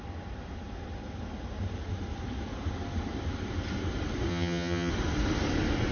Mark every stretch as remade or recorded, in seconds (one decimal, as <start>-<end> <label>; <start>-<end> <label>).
0.0-4.3 recorded; 4.3-4.9 remade; 4.9-5.9 recorded